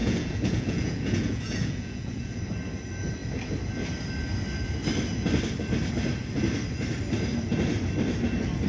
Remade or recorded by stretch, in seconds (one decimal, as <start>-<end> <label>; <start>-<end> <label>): 0.0-2.4 remade; 2.4-8.7 recorded